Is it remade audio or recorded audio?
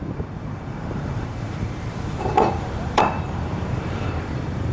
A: remade